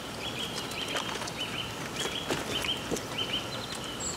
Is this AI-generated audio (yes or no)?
no